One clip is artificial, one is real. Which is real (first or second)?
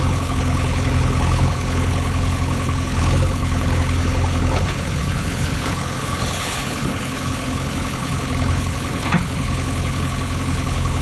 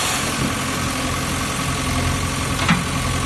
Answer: second